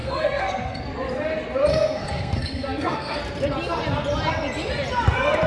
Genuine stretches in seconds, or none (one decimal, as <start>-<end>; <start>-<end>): 0.8-1.7; 3.2-5.5